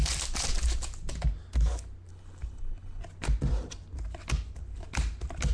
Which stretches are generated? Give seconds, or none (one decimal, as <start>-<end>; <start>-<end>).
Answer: 2.1-3.0